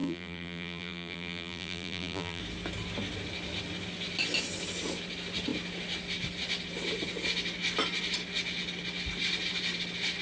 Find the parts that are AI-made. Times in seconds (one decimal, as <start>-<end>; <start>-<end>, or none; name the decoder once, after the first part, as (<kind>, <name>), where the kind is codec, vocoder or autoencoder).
0.0-2.4 (vocoder, BigVGAN v2)